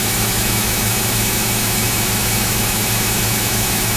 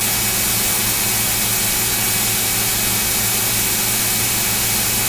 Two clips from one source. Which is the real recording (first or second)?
second